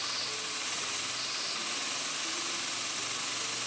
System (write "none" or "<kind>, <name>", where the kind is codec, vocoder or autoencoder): none